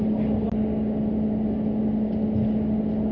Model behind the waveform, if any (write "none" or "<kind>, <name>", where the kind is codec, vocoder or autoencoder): none